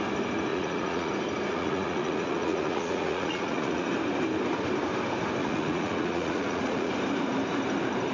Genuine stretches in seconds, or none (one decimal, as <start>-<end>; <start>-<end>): 0.0-0.5; 1.1-1.5; 3.9-5.4; 6.9-8.1